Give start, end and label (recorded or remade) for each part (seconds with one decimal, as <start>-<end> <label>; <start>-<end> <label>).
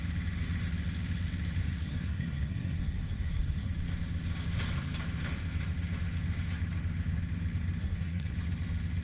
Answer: 0.0-1.6 recorded; 1.6-3.7 remade; 3.7-7.8 recorded; 7.8-8.3 remade; 8.3-9.0 recorded